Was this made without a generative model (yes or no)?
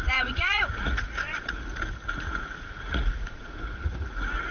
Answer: no